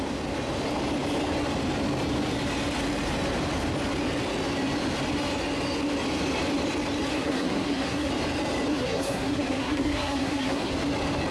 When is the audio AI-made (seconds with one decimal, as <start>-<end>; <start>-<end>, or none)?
7.1-8.1; 8.7-10.7